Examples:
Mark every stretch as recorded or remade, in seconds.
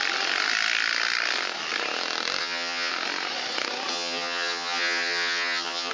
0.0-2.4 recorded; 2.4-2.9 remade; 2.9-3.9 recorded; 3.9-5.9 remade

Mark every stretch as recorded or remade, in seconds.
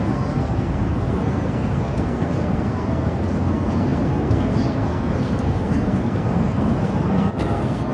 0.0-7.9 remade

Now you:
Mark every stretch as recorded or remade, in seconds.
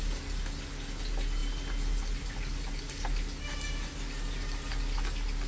0.0-5.5 recorded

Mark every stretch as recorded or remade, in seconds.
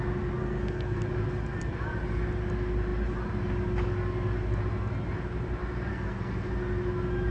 0.0-0.4 recorded; 0.4-1.0 remade; 1.0-5.9 recorded; 5.9-6.5 remade; 6.5-7.3 recorded